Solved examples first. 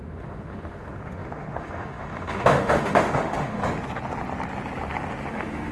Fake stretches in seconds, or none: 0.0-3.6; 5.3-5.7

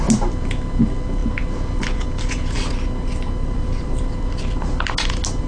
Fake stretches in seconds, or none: 3.4-4.1

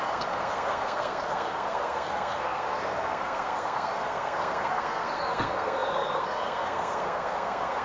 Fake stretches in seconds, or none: 0.0-7.8

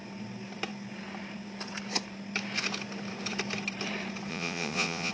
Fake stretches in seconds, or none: 4.3-5.1

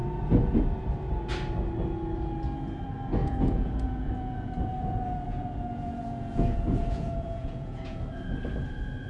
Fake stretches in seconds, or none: 3.2-8.0

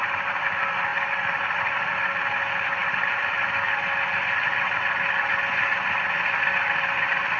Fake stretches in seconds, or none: none